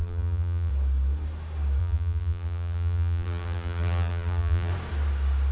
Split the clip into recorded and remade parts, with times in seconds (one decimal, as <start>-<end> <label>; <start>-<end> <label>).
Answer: 0.0-0.7 remade; 0.7-1.8 recorded; 1.8-4.7 remade; 4.7-5.5 recorded